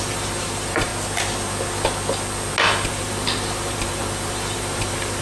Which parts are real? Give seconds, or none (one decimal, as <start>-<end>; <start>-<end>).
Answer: 0.9-2.9